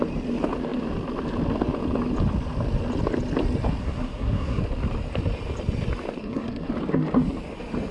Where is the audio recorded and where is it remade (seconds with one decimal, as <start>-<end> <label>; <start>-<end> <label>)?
0.0-3.8 recorded; 3.8-4.6 remade; 4.6-6.2 recorded; 6.2-6.7 remade; 6.7-7.9 recorded